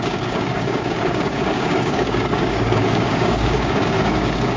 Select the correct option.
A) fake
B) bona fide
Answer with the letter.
A